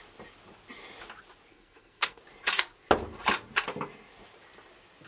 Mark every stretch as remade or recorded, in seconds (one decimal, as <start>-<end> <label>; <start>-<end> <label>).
0.0-1.5 recorded; 1.5-2.2 remade; 2.2-5.1 recorded